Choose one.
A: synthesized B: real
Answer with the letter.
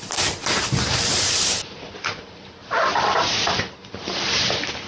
A